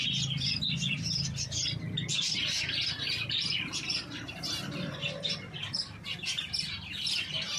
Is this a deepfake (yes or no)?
no